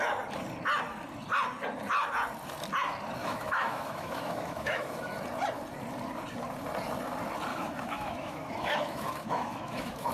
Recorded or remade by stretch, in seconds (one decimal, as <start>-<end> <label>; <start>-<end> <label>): 0.0-3.2 recorded; 3.2-5.1 remade; 5.1-7.5 recorded; 7.5-10.1 remade